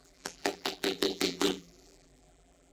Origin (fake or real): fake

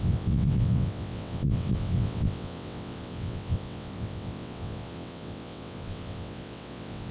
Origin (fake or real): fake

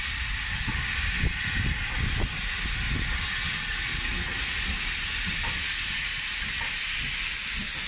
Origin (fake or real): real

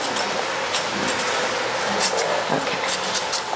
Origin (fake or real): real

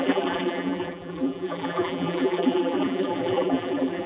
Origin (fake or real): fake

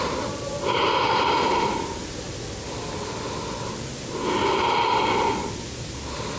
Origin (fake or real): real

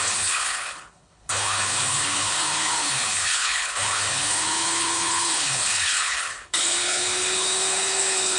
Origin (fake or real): fake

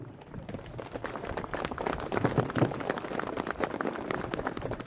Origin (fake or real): fake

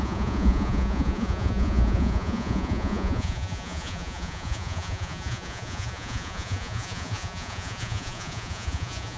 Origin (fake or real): fake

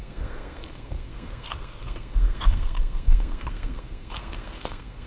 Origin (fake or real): fake